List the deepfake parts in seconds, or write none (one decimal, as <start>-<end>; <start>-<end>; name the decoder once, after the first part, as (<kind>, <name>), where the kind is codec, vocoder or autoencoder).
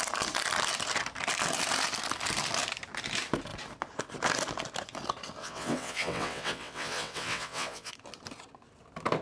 5.4-7.9 (vocoder, WaveNeXt)